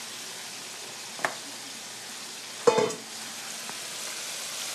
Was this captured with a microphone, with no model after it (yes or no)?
yes